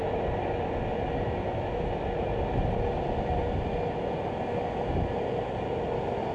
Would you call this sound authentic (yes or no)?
yes